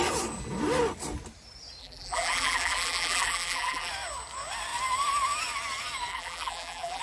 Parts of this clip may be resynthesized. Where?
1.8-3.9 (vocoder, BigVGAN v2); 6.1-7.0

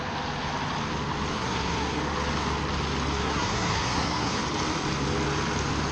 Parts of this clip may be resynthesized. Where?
1.3-2.0 (codec, SNAC); 3.2-4.4

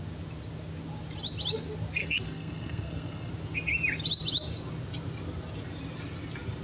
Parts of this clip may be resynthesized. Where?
2.0-3.3 (codec, SNAC)

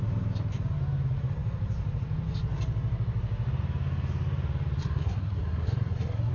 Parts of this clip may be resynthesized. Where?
4.8-6.3 (codec, SNAC)